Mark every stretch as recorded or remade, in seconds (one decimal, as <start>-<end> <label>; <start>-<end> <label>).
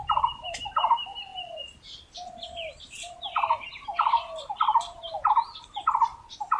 0.0-6.6 recorded